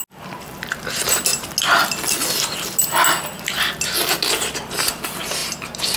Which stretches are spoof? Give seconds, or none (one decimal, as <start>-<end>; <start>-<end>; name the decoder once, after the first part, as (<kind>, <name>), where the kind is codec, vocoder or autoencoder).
none